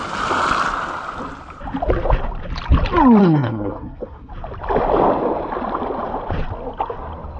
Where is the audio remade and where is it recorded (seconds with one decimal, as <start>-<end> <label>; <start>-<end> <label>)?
0.0-3.2 recorded; 3.2-4.3 remade; 4.3-7.4 recorded